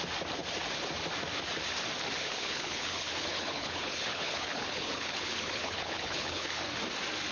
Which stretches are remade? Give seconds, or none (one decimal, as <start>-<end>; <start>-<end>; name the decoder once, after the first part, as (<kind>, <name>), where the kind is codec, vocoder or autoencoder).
2.2-6.6 (codec, HILCodec)